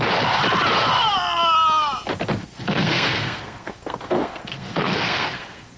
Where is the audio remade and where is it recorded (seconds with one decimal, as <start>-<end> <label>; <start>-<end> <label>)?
0.0-2.4 recorded; 2.4-5.8 remade